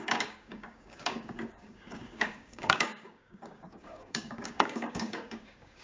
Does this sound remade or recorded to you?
remade